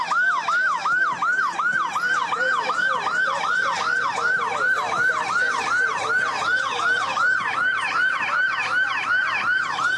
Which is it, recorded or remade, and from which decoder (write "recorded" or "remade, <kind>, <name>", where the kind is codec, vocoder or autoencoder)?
recorded